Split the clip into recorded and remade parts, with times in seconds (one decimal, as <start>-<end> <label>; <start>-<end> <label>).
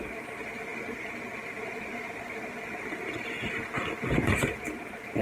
0.0-5.2 recorded